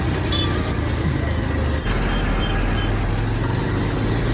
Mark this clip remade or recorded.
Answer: recorded